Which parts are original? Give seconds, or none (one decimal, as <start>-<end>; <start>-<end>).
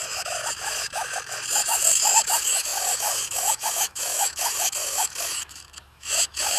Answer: none